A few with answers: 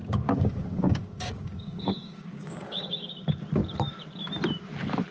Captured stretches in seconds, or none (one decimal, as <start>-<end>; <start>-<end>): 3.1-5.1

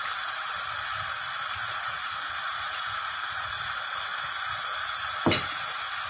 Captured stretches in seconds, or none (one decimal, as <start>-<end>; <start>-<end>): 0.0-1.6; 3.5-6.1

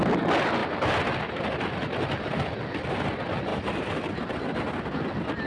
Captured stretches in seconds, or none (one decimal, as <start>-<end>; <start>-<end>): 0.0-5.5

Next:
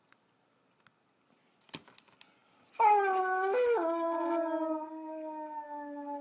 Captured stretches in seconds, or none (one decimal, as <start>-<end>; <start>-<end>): 0.0-6.2

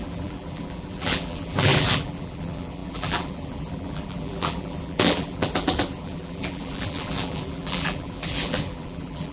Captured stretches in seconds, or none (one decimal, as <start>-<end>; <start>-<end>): none

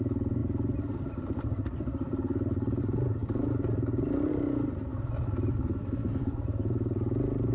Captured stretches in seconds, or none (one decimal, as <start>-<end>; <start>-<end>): 0.0-7.5

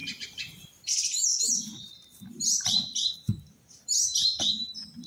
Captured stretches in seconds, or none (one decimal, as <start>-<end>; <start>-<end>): 0.9-1.3; 4.4-5.1